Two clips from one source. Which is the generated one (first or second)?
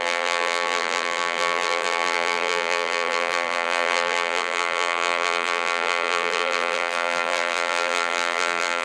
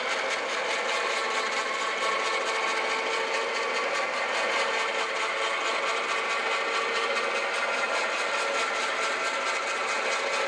first